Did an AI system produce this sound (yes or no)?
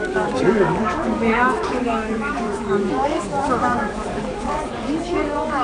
yes